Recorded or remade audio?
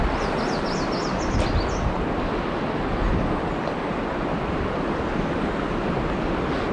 recorded